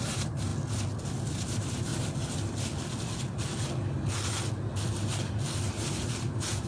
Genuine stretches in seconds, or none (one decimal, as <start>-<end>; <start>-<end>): 0.5-1.3; 1.9-5.9